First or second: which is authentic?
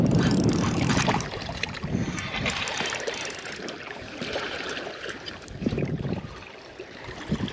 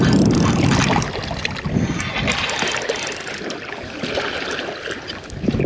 second